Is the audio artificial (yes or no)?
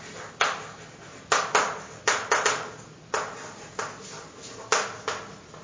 no